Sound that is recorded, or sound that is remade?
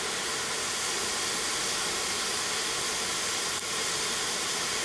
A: recorded